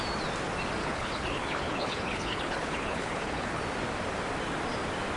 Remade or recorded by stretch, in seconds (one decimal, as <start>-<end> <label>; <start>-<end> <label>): 0.0-0.8 recorded; 0.8-3.6 remade; 3.6-5.2 recorded